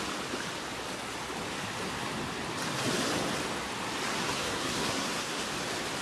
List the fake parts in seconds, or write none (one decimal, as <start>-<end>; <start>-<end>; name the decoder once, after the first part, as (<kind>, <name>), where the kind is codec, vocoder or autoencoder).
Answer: 4.1-5.4 (codec, SNAC)